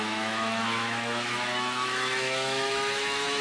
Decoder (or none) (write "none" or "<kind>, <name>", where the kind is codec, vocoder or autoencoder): autoencoder, DAC-VAE